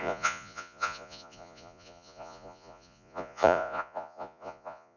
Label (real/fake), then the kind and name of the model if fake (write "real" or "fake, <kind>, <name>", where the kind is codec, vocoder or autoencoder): fake, vocoder, Vocos